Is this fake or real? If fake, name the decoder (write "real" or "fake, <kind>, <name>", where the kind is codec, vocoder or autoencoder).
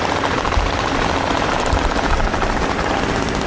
real